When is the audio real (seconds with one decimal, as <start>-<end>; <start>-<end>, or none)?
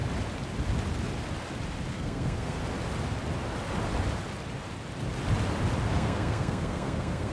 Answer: 0.0-1.9; 2.6-5.9